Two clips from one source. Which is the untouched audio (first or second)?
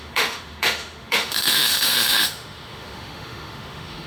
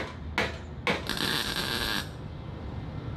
second